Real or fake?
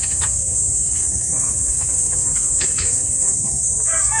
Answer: fake